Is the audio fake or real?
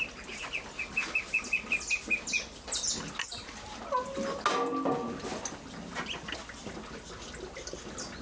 real